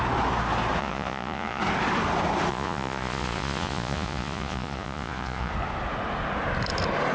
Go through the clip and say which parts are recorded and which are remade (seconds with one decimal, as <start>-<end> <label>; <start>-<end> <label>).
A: 0.0-0.8 recorded; 0.8-1.6 remade; 1.6-2.5 recorded; 2.5-5.5 remade; 5.5-7.1 recorded